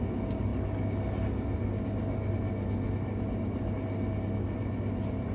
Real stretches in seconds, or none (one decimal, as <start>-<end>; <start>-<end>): 0.0-5.3